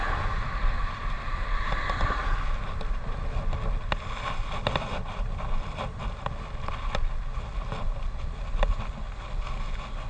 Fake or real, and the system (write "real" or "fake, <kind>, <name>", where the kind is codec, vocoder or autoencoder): real